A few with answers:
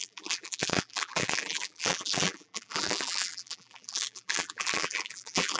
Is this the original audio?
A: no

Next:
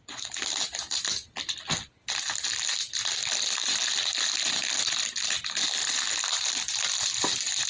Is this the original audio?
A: yes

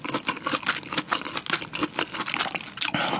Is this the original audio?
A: yes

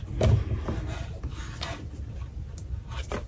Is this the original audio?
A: yes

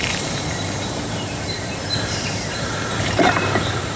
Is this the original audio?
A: no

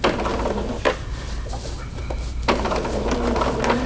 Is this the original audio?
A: yes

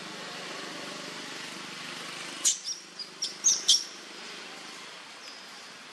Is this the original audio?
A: yes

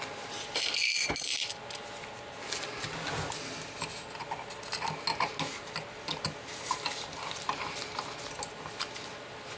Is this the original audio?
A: yes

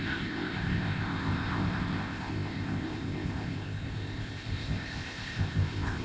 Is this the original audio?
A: no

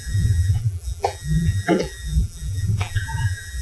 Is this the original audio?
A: no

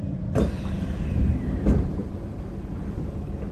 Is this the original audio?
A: no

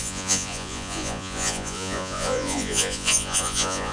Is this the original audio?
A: no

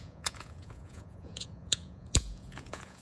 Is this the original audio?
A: no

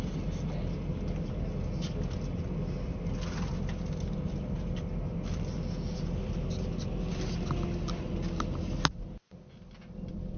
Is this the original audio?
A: yes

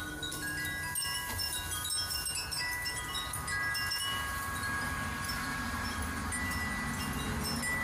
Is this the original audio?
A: yes